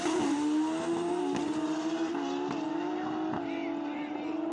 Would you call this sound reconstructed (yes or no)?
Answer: no